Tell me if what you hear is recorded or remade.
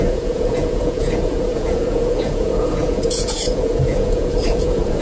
remade